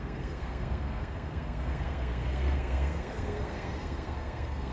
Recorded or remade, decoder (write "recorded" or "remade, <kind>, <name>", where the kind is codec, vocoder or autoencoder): remade, codec, SNAC